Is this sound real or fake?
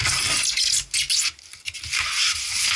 real